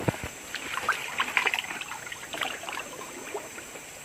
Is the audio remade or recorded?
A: remade